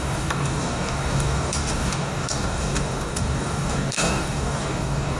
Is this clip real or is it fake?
fake